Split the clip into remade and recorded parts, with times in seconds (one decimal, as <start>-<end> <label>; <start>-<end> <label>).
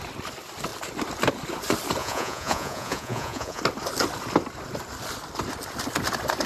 0.0-2.0 recorded; 2.0-3.6 remade; 3.6-6.5 recorded